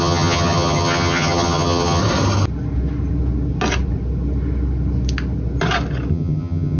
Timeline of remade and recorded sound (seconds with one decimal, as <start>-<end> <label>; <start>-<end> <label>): 0.0-2.0 remade; 2.0-6.1 recorded; 6.1-6.8 remade